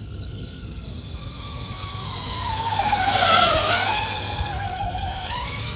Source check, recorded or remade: remade